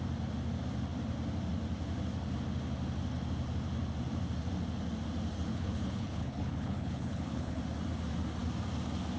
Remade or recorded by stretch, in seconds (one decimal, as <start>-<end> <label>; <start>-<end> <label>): 0.0-5.5 recorded; 5.5-7.6 remade; 7.6-9.2 recorded